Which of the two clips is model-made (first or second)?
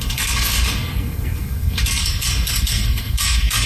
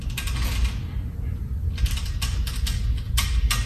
first